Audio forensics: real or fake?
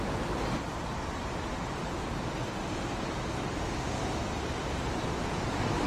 real